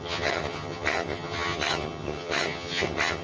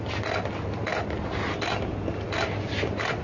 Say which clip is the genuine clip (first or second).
second